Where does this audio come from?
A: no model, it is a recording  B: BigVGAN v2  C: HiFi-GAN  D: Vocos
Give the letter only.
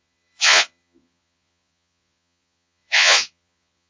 D